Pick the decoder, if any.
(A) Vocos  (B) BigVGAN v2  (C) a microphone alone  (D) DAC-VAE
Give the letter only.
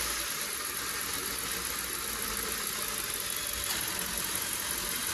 C